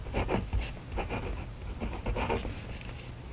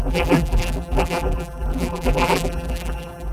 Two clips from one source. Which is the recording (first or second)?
first